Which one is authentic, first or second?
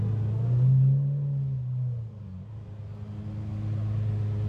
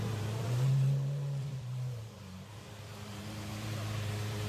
first